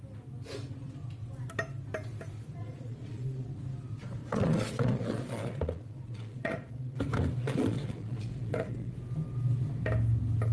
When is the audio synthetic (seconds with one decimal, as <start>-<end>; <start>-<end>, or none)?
2.6-3.5; 4.2-7.0; 7.4-8.9